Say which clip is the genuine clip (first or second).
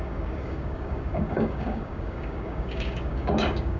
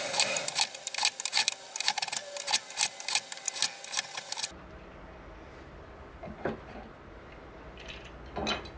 second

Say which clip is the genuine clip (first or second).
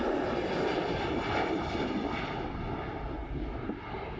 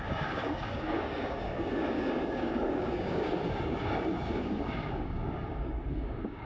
first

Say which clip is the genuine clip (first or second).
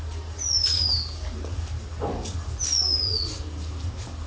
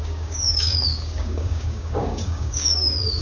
first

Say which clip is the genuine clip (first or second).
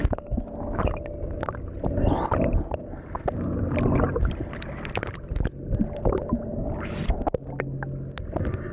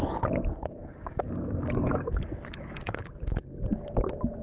first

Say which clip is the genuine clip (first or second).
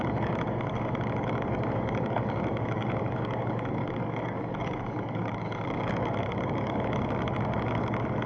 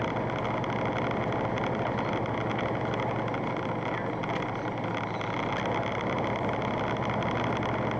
second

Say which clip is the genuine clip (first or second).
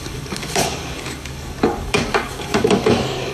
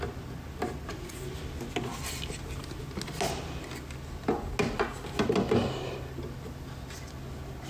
second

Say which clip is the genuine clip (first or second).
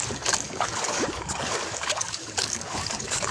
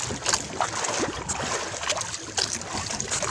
second